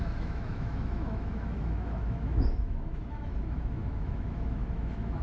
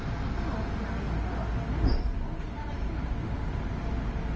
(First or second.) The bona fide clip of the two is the second